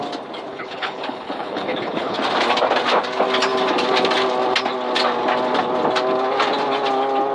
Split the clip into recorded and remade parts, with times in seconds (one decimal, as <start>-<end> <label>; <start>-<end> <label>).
0.0-0.5 recorded; 0.5-2.2 remade; 2.2-7.3 recorded